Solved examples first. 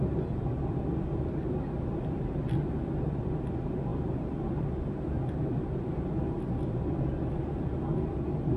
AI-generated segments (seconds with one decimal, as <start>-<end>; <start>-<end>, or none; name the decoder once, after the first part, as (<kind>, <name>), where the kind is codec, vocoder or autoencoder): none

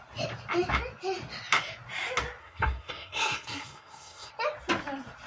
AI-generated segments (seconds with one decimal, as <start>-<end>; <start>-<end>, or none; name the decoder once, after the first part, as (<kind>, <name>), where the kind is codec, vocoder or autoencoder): 2.4-4.3 (codec, SNAC)

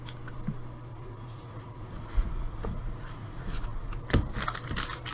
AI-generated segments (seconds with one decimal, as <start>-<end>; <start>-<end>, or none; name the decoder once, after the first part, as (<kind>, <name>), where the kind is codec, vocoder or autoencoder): 0.9-4.0 (vocoder, Vocos)

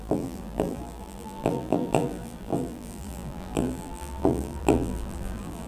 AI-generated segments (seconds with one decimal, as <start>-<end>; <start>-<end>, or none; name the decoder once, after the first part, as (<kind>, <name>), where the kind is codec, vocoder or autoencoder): 0.0-5.7 (vocoder, BigVGAN v2)